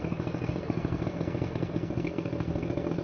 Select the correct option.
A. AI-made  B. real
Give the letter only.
A